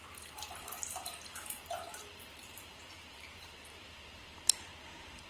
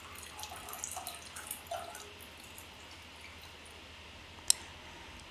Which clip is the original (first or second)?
second